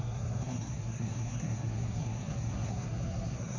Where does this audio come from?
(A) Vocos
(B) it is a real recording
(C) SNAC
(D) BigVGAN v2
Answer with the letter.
C